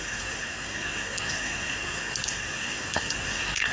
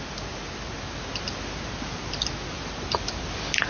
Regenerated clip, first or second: first